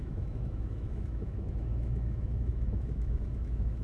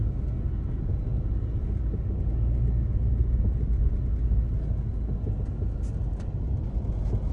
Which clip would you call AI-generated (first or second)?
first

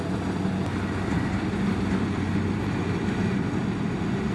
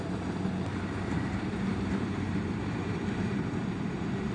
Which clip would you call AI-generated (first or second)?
second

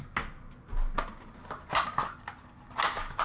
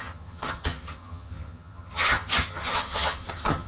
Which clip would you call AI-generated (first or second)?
second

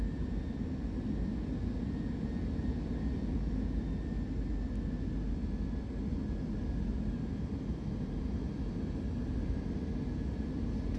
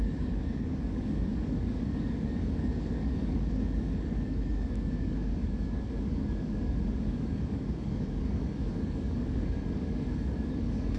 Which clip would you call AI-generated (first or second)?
second